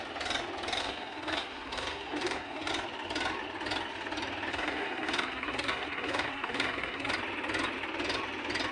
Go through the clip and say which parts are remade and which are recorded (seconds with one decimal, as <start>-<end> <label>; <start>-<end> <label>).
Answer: 0.0-0.8 recorded; 0.8-2.7 remade; 2.7-4.5 recorded; 4.5-7.1 remade; 7.1-8.7 recorded